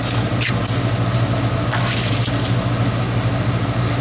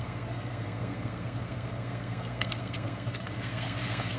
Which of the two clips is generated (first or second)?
second